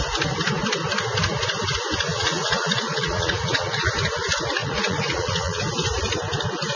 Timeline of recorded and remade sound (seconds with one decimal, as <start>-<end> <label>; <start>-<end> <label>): 0.0-2.1 recorded; 2.1-3.9 remade; 3.9-4.6 recorded; 4.6-5.6 remade; 5.6-6.8 recorded